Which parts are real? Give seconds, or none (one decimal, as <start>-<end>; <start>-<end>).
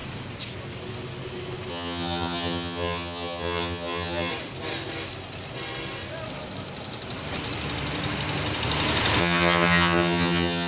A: 0.0-1.7; 4.3-9.2